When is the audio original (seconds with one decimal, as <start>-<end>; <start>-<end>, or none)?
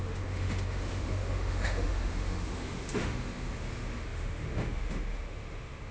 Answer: none